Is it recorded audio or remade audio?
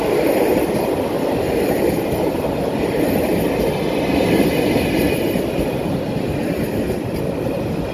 recorded